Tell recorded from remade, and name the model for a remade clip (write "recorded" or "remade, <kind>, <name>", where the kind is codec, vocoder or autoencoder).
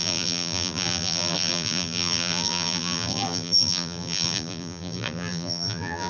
remade, vocoder, BigVGAN v2